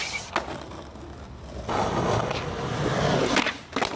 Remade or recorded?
recorded